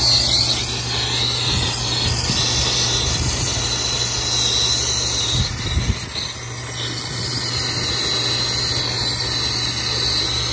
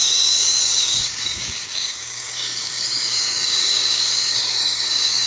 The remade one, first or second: second